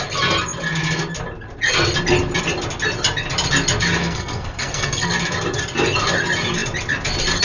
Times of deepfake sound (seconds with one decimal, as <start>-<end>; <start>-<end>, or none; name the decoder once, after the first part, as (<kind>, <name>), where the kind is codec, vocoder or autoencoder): 4.0-5.1 (codec, SNAC)